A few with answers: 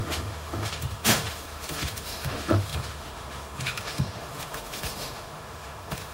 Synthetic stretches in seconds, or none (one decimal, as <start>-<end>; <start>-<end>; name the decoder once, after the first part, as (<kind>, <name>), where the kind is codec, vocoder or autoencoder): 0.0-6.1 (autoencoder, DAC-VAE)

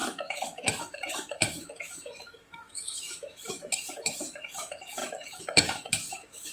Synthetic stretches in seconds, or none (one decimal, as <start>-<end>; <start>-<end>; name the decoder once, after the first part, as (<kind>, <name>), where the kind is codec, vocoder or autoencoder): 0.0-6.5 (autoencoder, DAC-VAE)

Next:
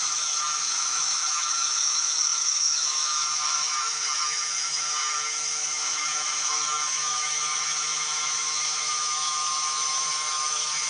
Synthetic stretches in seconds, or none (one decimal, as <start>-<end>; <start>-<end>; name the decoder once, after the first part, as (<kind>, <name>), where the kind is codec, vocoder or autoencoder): 0.0-10.9 (autoencoder, DAC-VAE)